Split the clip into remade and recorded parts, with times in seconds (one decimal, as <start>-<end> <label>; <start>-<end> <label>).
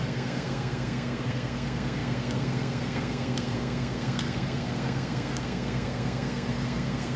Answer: 0.0-7.2 remade